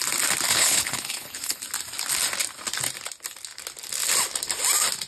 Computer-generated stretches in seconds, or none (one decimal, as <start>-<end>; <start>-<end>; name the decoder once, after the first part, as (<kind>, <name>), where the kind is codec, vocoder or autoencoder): 0.5-1.6 (codec, HILCodec)